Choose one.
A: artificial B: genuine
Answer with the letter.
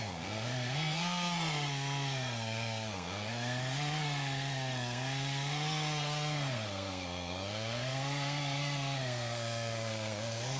A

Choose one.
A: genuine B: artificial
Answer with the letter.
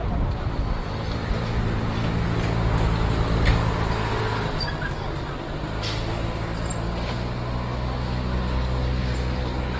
A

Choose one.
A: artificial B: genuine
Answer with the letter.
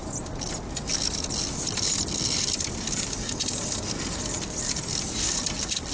B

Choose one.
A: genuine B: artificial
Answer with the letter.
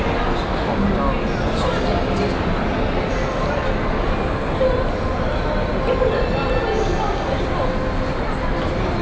A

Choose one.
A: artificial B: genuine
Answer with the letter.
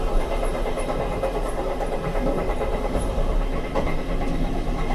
A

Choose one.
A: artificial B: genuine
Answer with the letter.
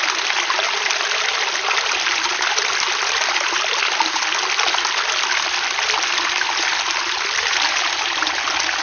B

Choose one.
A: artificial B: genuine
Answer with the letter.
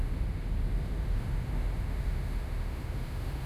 A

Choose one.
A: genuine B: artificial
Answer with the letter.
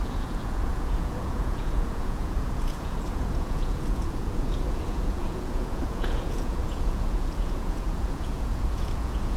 B